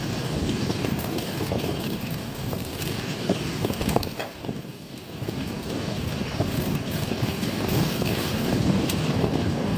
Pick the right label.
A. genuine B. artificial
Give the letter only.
B